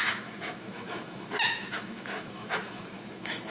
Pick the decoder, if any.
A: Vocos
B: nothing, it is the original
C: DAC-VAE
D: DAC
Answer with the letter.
C